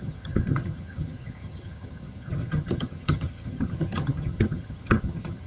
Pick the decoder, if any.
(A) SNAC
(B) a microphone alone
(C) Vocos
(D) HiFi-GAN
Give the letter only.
D